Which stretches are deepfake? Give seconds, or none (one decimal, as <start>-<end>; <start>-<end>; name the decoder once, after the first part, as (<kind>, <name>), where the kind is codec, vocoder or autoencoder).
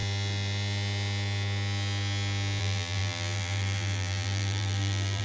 2.6-5.2 (vocoder, BigVGAN v2)